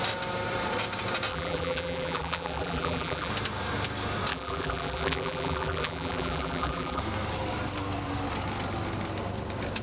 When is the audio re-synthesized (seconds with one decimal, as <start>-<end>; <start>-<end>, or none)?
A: 1.3-3.3; 4.3-7.0